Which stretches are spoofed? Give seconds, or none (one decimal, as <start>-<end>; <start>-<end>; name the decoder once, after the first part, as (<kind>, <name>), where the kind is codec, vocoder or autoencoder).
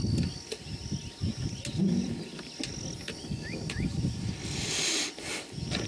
none